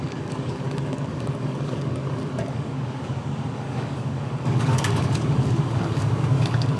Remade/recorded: remade